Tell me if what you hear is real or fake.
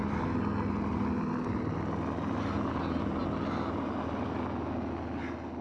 real